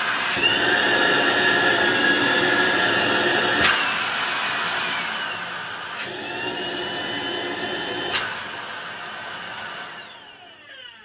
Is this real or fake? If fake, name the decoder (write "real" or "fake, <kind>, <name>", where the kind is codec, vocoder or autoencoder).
real